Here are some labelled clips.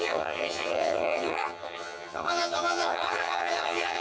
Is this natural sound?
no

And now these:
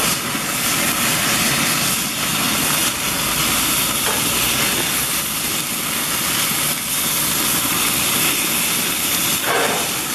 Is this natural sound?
yes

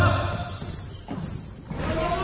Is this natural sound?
yes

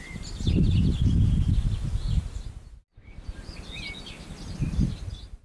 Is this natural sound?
yes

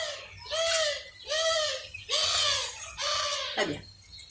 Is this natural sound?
yes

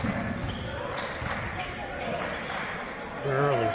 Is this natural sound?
yes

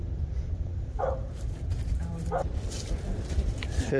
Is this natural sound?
yes